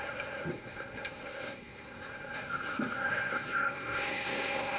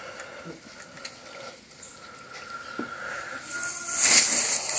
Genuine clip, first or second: second